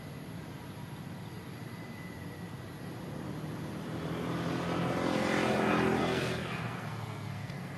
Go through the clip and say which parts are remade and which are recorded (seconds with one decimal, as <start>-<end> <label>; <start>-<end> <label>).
0.0-6.0 recorded; 6.0-7.8 remade